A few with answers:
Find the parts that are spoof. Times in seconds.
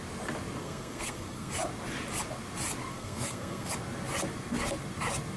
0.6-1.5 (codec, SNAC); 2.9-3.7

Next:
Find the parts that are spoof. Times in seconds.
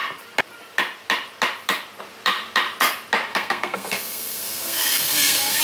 3.3-5.6 (codec, SNAC)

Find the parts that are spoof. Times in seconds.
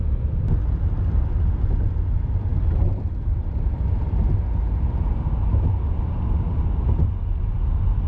none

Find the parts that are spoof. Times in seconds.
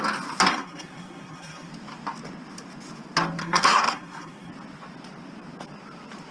0.5-1.7 (codec, SNAC); 3.4-4.5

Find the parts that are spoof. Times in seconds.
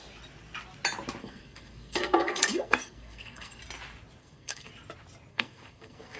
1.2-3.6 (codec, SNAC); 4.2-4.7; 5.3-6.2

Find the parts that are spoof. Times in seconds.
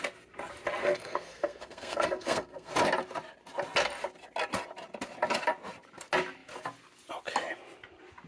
0.8-2.7 (codec, SNAC)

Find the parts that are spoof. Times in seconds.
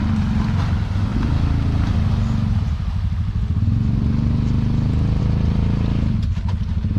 none